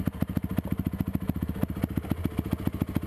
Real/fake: real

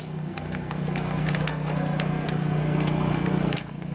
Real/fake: fake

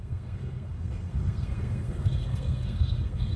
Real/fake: fake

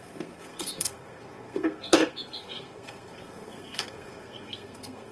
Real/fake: fake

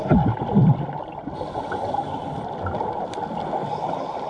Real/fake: real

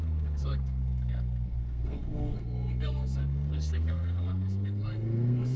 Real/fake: fake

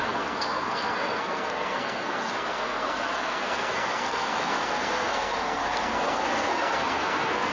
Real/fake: fake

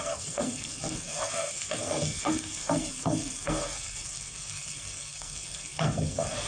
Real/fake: fake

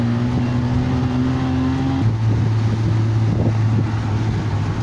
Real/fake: real